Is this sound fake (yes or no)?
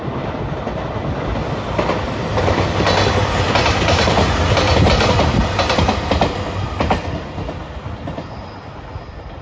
no